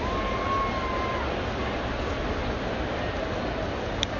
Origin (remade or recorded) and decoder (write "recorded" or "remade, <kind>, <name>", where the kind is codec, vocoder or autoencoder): recorded